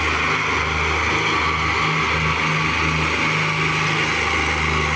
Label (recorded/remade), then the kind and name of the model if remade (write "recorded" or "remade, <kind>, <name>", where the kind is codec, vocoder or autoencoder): recorded